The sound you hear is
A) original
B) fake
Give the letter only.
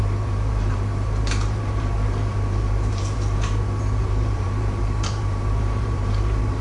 B